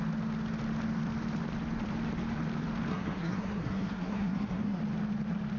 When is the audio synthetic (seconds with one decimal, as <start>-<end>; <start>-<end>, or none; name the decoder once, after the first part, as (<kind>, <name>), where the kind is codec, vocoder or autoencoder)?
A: 2.9-4.8 (codec, SNAC)